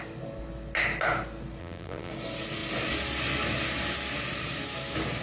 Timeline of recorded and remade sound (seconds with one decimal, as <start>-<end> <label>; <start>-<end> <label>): 0.0-1.6 recorded; 1.6-2.1 remade; 2.1-5.2 recorded